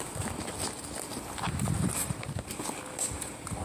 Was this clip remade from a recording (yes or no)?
no